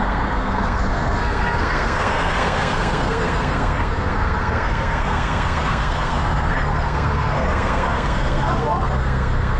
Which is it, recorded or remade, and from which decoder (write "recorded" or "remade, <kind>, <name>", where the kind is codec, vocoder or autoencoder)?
remade, codec, SNAC